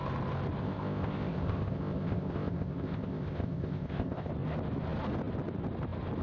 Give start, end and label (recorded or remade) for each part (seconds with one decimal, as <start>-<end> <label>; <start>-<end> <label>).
0.0-0.6 recorded; 0.6-4.3 remade; 4.3-6.2 recorded